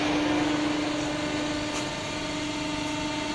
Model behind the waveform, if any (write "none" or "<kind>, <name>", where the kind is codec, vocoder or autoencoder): none